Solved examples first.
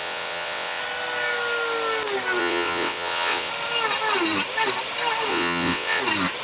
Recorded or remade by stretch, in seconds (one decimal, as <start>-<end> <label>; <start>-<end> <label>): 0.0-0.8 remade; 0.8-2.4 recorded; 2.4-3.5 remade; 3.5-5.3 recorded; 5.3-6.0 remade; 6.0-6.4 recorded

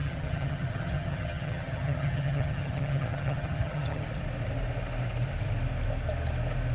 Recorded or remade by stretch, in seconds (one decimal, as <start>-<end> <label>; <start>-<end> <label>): 0.0-4.0 remade; 4.0-6.7 recorded

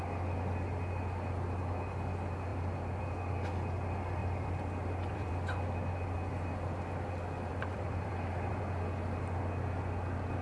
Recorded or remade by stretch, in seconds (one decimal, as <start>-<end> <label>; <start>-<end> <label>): 0.0-2.5 recorded; 2.5-3.0 remade; 3.0-4.2 recorded; 4.2-5.3 remade; 5.3-7.5 recorded; 7.5-8.6 remade; 8.6-10.4 recorded

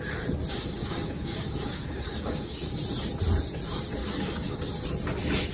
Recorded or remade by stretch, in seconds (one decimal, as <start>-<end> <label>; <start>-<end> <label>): 0.0-0.5 recorded; 0.5-2.8 remade; 2.8-4.0 recorded; 4.0-4.7 remade; 4.7-5.5 recorded

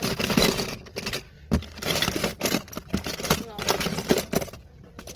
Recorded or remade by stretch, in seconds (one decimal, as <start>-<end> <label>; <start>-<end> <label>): 0.0-5.2 recorded

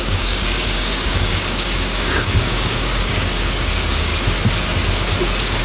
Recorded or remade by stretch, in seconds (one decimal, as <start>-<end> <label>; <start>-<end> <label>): 0.0-4.1 remade; 4.1-5.6 recorded